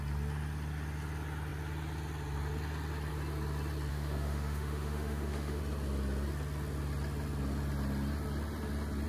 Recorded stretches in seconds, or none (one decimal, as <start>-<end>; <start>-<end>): 0.0-3.9; 5.6-9.1